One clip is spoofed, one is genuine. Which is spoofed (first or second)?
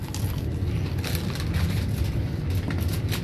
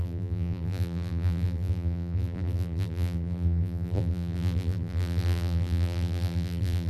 second